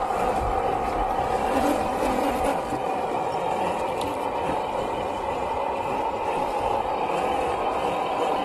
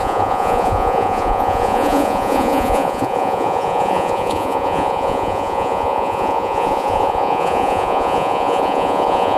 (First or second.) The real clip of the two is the first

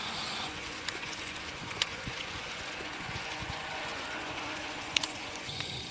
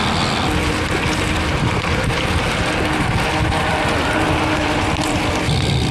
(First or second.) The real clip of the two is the second